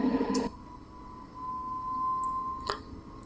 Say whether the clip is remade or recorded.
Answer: recorded